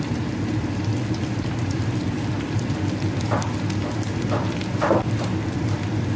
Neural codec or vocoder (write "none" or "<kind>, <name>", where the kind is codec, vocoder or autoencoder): vocoder, BigVGAN v2